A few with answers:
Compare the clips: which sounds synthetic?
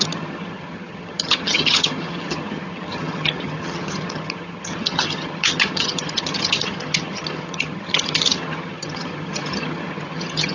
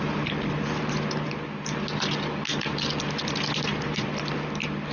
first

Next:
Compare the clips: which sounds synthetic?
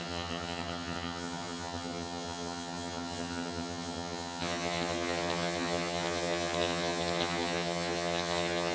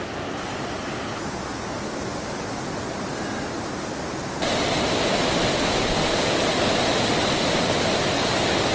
first